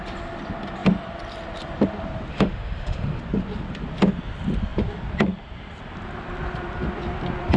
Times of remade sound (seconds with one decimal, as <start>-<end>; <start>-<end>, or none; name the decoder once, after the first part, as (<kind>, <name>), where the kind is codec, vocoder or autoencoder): 2.3-3.2 (autoencoder, DAC-VAE)